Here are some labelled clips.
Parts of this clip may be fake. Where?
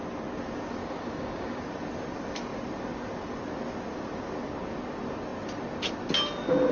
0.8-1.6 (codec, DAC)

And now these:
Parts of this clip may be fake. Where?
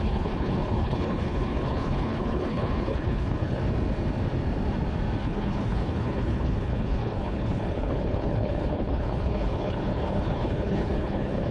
0.0-3.6 (codec, HILCodec); 5.2-11.5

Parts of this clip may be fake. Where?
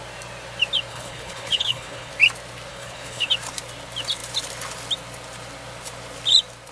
0.9-2.1 (codec, HILCodec); 2.7-3.3